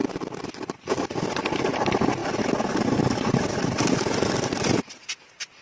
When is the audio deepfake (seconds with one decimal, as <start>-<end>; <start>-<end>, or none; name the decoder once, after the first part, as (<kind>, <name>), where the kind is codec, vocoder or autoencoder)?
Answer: none